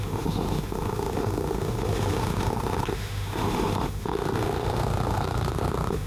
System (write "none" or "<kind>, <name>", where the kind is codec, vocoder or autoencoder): autoencoder, DAC-VAE